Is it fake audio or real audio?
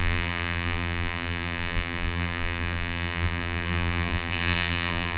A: fake